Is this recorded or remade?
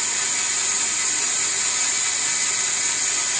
remade